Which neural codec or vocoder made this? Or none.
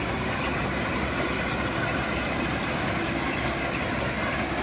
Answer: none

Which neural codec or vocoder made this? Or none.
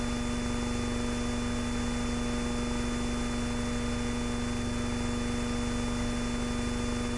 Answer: none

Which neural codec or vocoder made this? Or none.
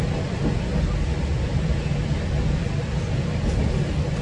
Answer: none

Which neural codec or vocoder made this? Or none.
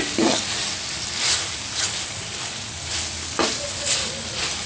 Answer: none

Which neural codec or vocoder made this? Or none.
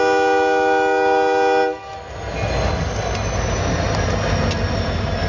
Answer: none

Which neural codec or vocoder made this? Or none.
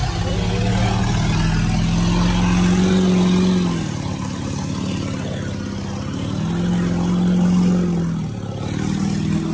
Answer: none